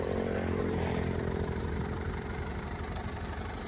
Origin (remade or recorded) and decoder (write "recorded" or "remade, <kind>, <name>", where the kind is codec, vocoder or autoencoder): remade, vocoder, BigVGAN v2